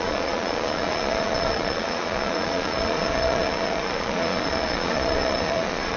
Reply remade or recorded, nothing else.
remade